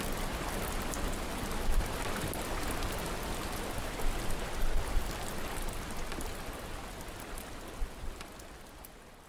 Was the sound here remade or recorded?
recorded